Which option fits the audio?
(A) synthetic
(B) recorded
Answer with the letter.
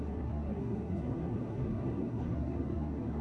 A